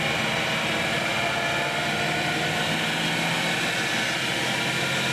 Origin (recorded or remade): recorded